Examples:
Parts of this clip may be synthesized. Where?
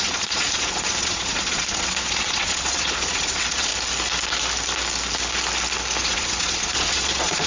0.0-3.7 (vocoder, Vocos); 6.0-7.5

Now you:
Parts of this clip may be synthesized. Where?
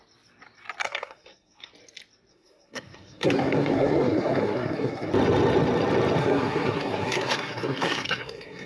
0.8-1.7 (codec, SNAC); 2.3-5.1; 6.2-8.7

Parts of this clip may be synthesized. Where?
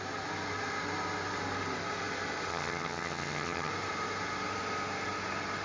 2.5-3.7 (vocoder, HiFi-GAN)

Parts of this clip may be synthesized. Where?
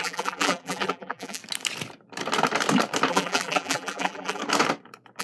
0.0-1.4 (vocoder, BigVGAN v2); 3.1-4.4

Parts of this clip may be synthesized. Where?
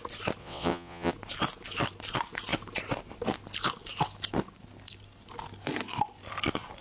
0.4-1.1 (vocoder, WaveNeXt)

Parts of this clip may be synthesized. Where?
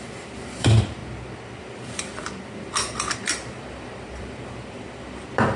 0.0-1.0 (vocoder, BigVGAN v2); 1.6-5.6